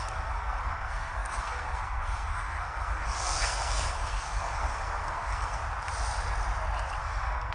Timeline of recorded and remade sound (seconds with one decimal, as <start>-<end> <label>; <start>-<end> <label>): 0.0-5.6 remade; 5.6-7.0 recorded; 7.0-7.5 remade